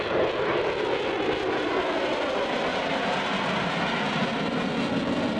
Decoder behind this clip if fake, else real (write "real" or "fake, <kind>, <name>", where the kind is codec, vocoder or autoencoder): real